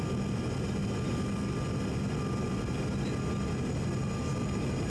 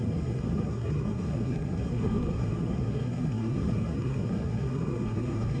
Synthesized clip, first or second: second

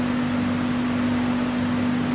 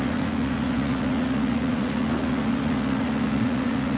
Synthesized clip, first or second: second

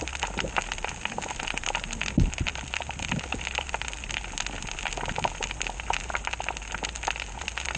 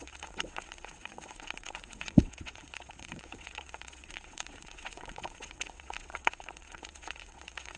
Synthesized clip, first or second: second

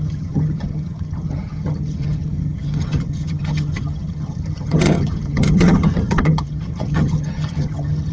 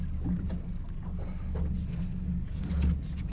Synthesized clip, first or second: first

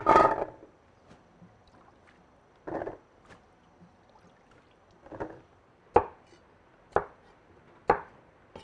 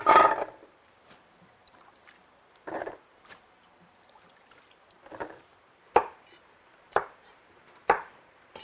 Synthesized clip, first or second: second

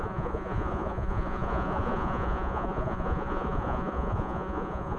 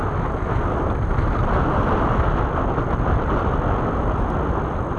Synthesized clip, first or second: first